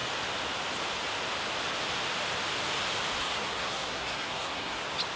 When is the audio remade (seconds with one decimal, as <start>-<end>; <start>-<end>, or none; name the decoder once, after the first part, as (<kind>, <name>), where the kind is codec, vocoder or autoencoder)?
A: 3.2-4.8 (codec, SNAC)